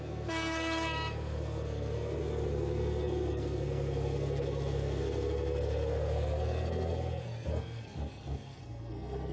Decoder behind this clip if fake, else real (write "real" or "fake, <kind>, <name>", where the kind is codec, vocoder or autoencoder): fake, codec, SNAC